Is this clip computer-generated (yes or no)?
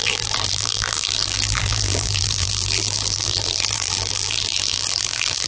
yes